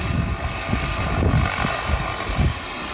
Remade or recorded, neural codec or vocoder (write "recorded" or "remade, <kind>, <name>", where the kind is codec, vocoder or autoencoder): recorded